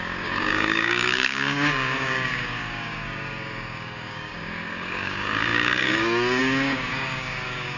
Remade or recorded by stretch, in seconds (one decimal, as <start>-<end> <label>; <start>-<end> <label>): 0.0-7.8 remade